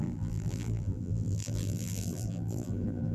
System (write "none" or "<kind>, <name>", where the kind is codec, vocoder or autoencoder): vocoder, BigVGAN v2